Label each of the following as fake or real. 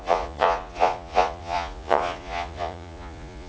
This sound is fake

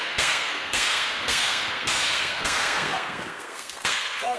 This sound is fake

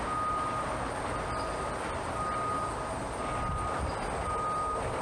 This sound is real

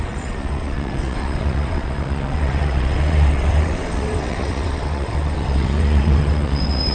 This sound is fake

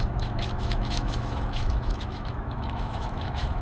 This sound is fake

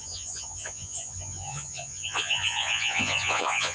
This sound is fake